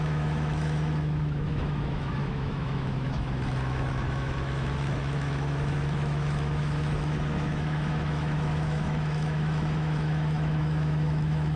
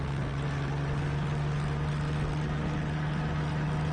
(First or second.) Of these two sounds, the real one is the second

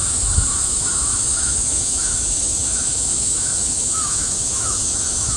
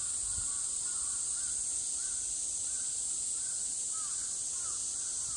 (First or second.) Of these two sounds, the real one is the second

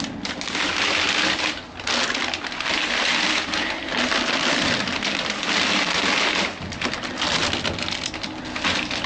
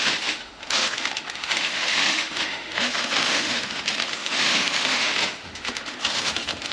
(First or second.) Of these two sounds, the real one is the first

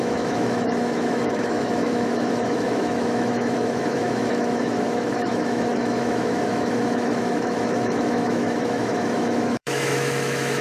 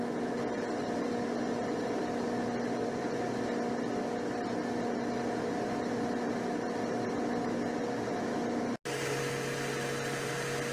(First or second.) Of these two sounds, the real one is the second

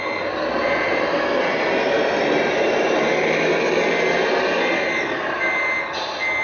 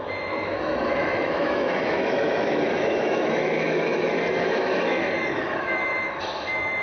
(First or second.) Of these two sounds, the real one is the first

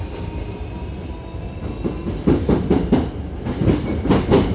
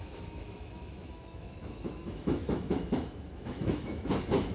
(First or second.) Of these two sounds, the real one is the first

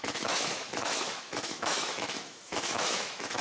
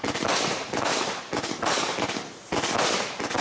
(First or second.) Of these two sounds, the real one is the second